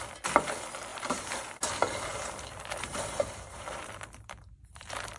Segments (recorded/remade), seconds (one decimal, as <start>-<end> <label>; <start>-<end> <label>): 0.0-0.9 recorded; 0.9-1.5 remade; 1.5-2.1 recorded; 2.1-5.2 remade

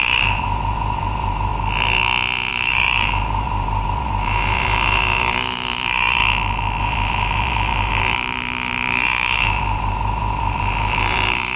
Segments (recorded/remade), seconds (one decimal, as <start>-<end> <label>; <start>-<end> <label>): 0.0-1.5 remade; 1.5-2.5 recorded; 2.5-6.2 remade; 6.2-6.8 recorded; 6.8-11.6 remade

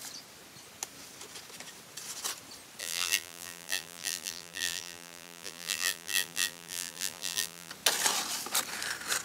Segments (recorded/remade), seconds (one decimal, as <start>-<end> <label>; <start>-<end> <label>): 0.0-2.8 recorded; 2.8-7.7 remade; 7.7-9.2 recorded

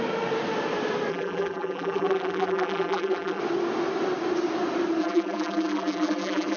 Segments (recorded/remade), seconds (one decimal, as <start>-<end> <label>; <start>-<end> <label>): 0.0-1.1 recorded; 1.1-3.4 remade; 3.4-5.0 recorded; 5.0-6.6 remade